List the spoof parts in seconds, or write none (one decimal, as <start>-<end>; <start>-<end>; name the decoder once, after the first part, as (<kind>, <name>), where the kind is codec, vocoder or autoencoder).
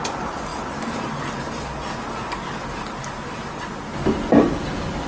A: none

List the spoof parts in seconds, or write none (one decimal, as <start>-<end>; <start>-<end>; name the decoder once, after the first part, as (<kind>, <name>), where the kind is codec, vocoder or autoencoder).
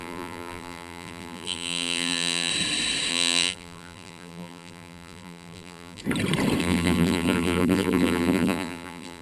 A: 0.0-2.5 (vocoder, BigVGAN v2); 3.1-6.0; 6.6-9.2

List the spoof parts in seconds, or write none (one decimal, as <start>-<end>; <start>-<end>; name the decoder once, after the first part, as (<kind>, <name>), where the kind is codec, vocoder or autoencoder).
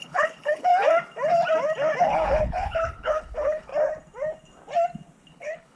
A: 0.0-0.7 (codec, HILCodec); 2.0-3.7; 5.3-5.8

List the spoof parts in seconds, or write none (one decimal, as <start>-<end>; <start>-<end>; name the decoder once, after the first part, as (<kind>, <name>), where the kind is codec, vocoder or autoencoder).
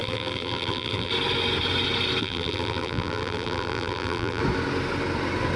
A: 0.0-1.1 (vocoder, BigVGAN v2); 2.2-4.4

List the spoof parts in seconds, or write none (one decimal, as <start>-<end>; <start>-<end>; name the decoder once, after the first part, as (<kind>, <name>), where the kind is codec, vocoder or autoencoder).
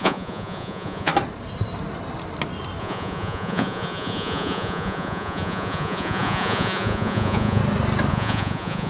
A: 0.0-1.1 (vocoder, Vocos); 2.8-7.6; 8.1-8.9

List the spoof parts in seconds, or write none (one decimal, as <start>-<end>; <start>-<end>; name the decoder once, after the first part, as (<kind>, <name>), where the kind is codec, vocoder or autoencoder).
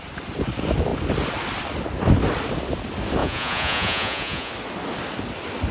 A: 3.2-4.5 (vocoder, Vocos)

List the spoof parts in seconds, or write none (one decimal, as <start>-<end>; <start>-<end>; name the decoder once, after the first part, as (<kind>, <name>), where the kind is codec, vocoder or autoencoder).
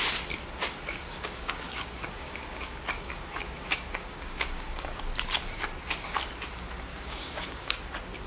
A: 0.9-5.0 (codec, DAC); 6.9-7.8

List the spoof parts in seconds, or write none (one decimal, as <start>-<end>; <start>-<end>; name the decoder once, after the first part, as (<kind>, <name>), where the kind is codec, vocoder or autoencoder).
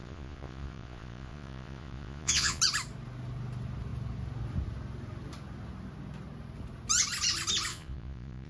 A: 0.0-2.6 (vocoder, Vocos); 7.7-8.5